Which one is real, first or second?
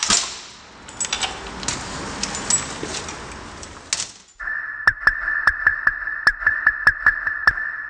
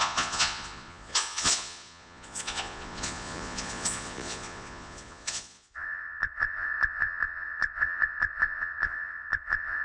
first